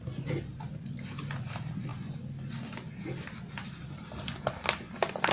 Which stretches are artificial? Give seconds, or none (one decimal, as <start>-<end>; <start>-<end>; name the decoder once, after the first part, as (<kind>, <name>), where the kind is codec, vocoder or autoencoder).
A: 0.5-1.5 (vocoder, BigVGAN v2); 3.6-4.4